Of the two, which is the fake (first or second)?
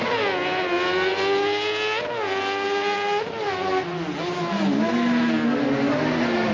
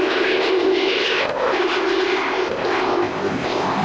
second